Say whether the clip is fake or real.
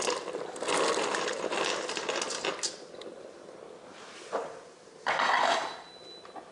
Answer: real